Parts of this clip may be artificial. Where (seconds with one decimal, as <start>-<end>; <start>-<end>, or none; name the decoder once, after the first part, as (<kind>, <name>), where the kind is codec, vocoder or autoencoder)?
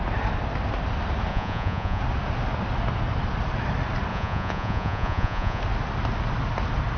1.3-2.0 (vocoder, Vocos); 4.1-5.6